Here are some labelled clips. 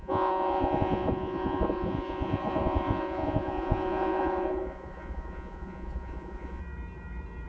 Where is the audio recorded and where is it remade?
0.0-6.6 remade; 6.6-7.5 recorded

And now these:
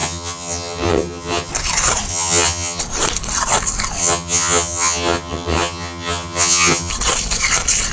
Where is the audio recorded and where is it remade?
0.0-1.5 remade; 1.5-2.1 recorded; 2.1-2.8 remade; 2.8-4.0 recorded; 4.0-6.9 remade; 6.9-7.9 recorded